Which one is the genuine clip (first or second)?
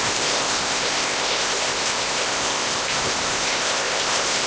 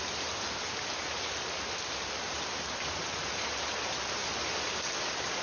second